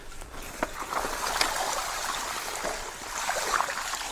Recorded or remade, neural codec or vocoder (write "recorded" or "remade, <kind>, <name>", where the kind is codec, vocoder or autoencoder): recorded